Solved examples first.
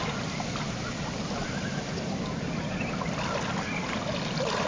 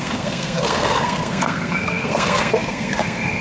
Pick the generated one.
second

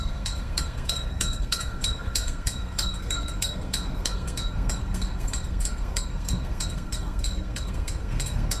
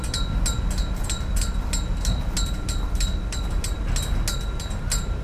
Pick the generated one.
first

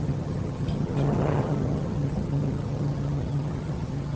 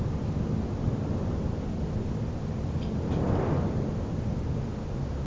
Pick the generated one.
first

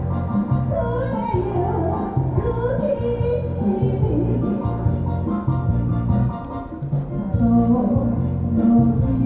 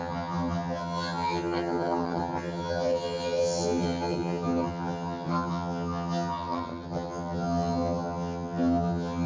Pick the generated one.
second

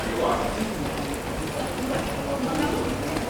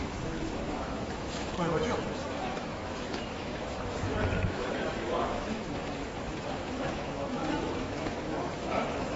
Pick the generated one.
second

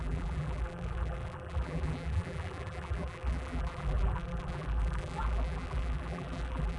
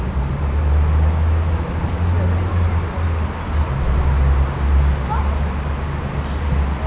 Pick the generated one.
first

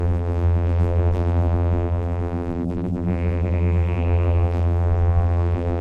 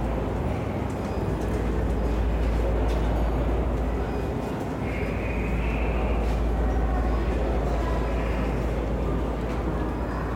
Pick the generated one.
first